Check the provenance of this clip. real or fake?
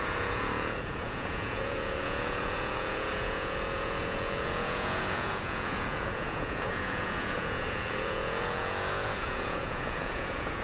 fake